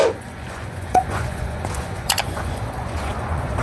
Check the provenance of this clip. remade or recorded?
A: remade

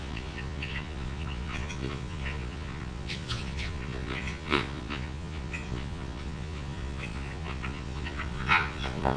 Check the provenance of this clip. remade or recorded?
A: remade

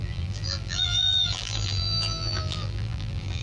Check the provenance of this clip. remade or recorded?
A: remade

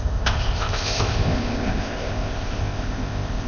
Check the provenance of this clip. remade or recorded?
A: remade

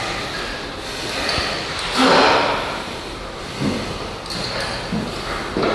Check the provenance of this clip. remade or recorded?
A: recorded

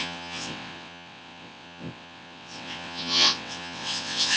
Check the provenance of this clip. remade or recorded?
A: remade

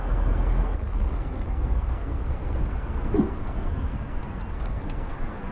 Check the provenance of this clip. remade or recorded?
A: remade